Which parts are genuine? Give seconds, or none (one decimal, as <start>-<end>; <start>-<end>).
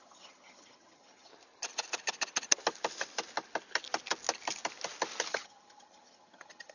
1.3-5.3